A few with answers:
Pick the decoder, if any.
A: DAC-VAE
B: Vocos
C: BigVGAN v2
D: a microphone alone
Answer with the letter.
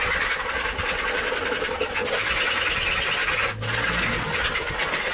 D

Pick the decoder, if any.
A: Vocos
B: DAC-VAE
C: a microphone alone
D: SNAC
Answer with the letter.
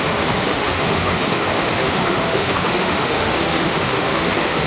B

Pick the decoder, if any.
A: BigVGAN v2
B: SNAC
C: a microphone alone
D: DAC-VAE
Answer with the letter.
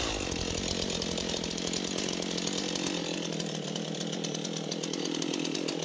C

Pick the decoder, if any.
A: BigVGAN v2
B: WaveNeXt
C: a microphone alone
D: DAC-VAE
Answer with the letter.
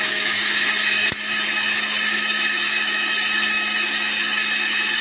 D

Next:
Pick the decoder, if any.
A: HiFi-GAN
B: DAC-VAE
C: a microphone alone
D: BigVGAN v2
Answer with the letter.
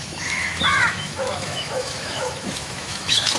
B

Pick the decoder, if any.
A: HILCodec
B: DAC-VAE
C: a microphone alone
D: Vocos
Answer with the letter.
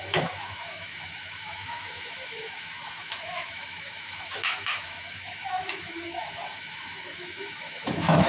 B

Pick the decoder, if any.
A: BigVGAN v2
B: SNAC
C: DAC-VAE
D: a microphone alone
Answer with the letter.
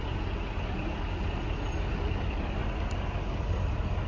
D